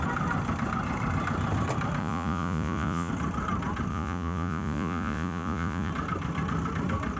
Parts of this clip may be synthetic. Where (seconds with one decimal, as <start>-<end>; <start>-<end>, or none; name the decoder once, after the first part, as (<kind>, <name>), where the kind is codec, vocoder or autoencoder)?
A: 2.0-3.1 (vocoder, Vocos); 3.9-5.9

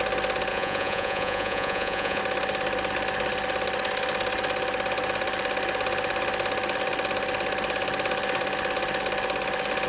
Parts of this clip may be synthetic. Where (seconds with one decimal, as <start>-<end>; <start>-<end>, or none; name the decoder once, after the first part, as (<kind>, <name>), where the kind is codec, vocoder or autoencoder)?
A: 0.5-2.2 (vocoder, Vocos)